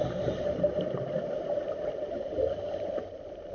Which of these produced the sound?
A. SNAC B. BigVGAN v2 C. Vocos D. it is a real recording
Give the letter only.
D